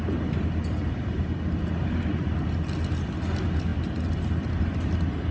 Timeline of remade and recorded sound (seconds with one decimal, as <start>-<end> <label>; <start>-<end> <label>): 0.0-5.3 recorded